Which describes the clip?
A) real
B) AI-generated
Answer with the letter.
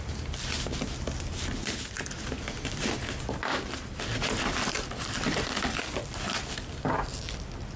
A